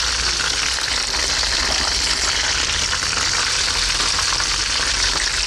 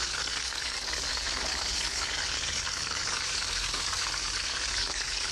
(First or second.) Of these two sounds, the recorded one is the first